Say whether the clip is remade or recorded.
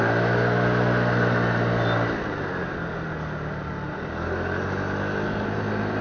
recorded